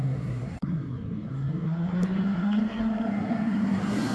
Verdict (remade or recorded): remade